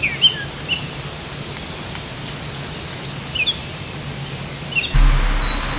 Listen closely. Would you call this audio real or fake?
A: real